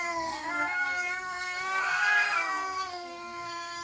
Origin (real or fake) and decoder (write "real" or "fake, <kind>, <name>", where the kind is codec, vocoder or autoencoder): fake, codec, SNAC